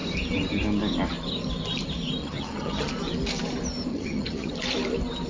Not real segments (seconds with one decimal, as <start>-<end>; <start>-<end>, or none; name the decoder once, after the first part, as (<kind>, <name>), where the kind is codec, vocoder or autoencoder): 2.2-2.9 (vocoder, HiFi-GAN); 3.9-4.5